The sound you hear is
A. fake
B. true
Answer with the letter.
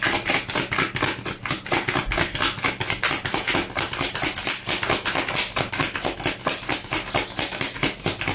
B